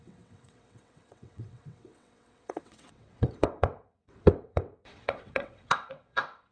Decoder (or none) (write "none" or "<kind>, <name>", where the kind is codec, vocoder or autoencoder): vocoder, WaveNeXt